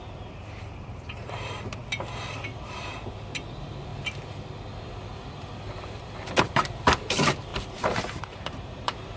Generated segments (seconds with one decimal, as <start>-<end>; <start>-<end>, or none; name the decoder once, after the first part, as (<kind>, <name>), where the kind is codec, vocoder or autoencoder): 0.0-1.8 (vocoder, BigVGAN v2); 2.3-3.9; 6.4-9.2

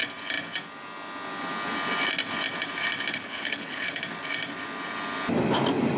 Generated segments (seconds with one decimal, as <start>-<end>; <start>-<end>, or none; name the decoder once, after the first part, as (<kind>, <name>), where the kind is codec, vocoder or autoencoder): 3.1-4.0 (codec, HILCodec)

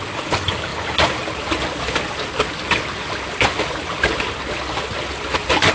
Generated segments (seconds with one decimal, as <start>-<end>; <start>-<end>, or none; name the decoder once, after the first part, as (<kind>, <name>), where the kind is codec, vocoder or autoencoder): none

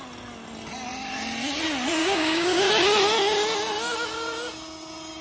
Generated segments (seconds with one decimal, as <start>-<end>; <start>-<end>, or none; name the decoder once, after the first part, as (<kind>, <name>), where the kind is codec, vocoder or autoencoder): 2.0-2.7 (codec, DAC)

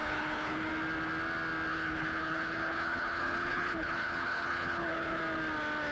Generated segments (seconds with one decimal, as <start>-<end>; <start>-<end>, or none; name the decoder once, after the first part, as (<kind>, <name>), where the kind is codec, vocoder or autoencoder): 0.0-0.7 (codec, HILCodec); 1.7-5.2